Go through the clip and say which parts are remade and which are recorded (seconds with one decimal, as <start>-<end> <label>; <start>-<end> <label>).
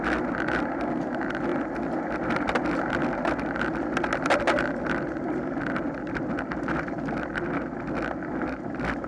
0.0-9.1 recorded